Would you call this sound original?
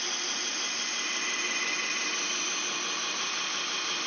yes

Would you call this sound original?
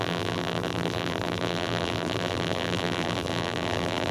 no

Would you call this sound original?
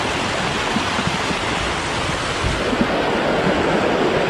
yes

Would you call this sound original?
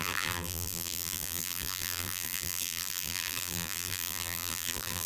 no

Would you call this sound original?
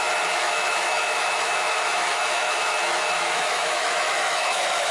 no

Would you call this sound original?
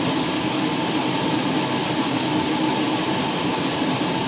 yes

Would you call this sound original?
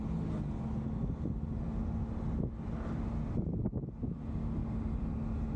yes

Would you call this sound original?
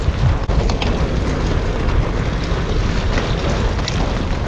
yes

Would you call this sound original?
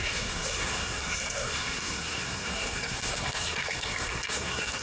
no